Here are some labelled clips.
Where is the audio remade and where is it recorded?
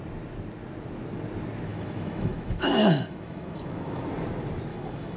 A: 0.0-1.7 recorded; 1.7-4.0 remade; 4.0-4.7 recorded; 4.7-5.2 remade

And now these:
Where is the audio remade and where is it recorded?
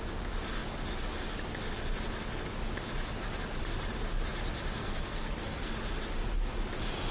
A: 0.0-4.8 recorded; 4.8-5.7 remade; 5.7-7.1 recorded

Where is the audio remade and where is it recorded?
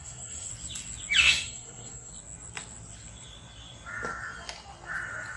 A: 0.0-0.5 remade; 0.5-1.2 recorded; 1.2-2.1 remade; 2.1-5.4 recorded